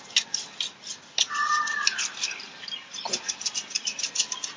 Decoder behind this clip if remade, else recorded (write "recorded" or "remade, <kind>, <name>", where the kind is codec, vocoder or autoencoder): recorded